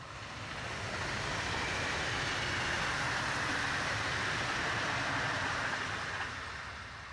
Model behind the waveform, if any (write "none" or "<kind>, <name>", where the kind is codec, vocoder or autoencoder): none